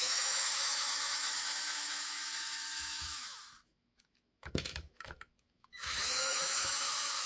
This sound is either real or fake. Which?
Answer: fake